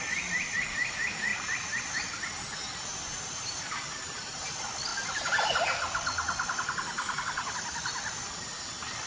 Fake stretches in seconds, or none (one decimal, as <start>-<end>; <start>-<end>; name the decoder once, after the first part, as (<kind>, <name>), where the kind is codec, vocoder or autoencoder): 1.3-1.8 (vocoder, BigVGAN v2); 2.9-4.5